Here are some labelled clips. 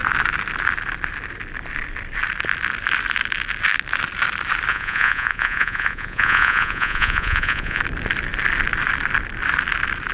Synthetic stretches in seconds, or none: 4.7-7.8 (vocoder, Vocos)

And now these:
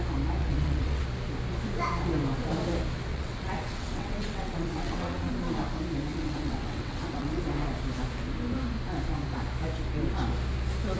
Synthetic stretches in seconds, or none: 0.4-1.0 (vocoder, WaveNeXt); 3.1-5.3; 6.1-7.4